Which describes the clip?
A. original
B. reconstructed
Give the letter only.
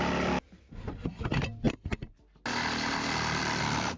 A